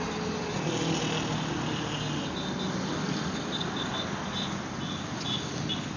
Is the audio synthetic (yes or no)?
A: no